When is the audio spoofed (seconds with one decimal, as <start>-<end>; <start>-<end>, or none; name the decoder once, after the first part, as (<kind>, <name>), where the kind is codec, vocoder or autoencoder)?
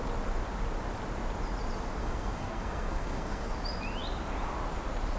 2.0-3.5 (codec, SNAC)